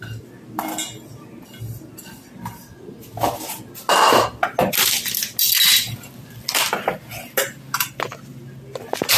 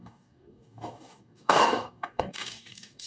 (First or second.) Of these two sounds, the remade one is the second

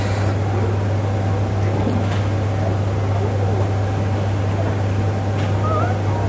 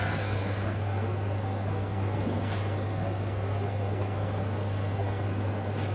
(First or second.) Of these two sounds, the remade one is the second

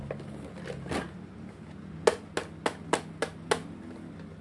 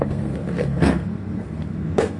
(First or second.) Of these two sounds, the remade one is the second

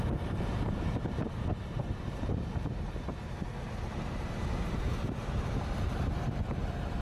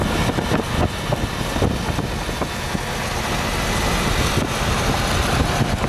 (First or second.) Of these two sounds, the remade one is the first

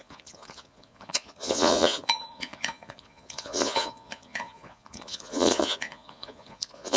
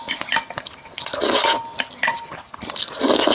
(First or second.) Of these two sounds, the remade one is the first